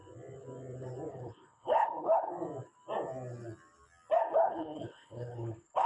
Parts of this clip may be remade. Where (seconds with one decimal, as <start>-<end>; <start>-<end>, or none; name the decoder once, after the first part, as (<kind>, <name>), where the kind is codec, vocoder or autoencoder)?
1.1-2.3 (codec, HILCodec); 4.3-5.9